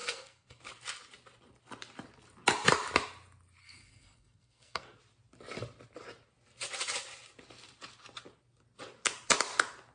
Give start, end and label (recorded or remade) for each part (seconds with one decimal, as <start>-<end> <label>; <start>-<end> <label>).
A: 0.0-0.6 remade; 0.6-3.6 recorded; 3.6-5.0 remade; 5.0-9.9 recorded